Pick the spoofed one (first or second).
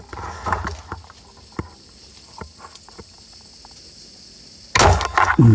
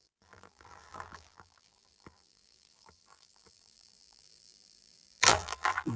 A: second